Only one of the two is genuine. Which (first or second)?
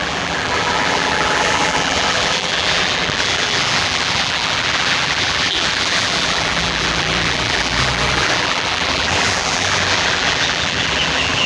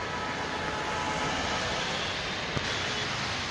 second